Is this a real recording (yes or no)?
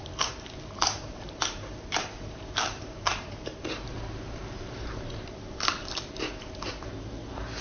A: no